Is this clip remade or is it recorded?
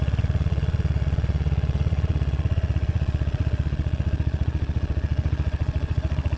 remade